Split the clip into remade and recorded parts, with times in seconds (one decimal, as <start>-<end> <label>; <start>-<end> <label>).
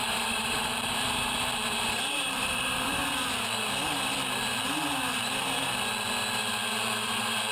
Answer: 0.0-3.0 remade; 3.0-6.9 recorded; 6.9-7.5 remade